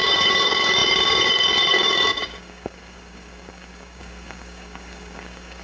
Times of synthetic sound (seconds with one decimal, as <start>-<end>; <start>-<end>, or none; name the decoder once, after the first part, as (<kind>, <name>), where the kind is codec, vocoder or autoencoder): 0.0-5.6 (codec, DAC)